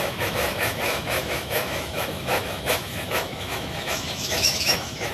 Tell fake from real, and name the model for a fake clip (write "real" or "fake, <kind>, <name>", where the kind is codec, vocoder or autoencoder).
fake, autoencoder, DAC-VAE